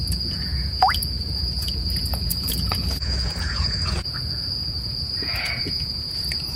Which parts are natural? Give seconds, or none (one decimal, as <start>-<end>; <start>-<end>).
none